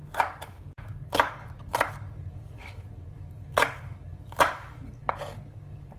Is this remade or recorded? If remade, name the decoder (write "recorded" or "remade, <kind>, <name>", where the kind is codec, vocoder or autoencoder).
remade, codec, DAC